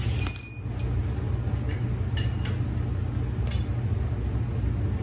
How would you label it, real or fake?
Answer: real